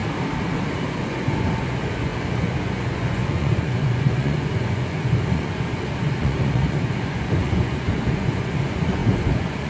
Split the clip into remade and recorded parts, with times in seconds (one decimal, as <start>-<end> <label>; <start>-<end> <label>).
0.0-0.9 recorded; 0.9-9.7 remade